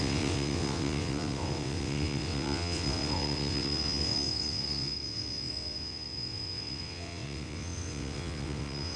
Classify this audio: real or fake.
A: fake